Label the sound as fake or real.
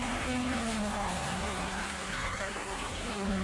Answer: fake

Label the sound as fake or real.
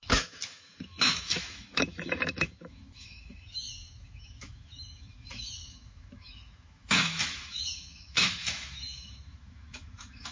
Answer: fake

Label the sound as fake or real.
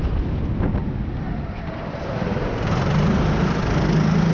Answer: real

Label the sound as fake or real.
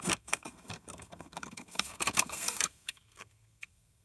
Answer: fake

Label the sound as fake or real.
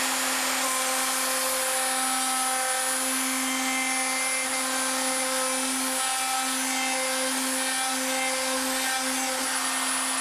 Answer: real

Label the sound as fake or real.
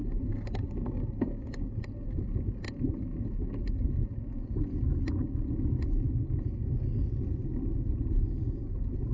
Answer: real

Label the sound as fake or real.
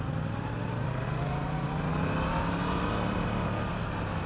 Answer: real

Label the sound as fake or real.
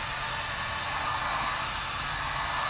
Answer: real